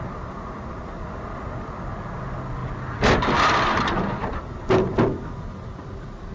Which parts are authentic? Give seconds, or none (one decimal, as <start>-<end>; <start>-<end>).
0.0-2.6; 3.2-4.2; 5.0-6.3